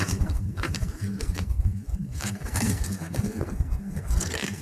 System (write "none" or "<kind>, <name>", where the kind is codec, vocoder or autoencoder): codec, SNAC